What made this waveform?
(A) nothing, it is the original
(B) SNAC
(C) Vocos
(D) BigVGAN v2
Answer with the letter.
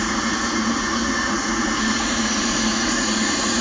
C